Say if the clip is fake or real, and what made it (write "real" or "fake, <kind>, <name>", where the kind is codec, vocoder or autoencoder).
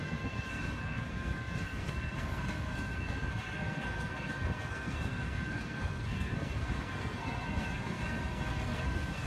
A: fake, codec, SNAC